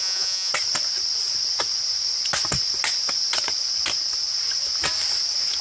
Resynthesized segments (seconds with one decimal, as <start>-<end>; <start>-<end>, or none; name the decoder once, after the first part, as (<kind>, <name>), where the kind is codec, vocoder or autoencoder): 0.0-0.5 (vocoder, Vocos)